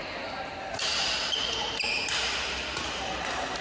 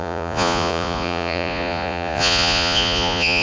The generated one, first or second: second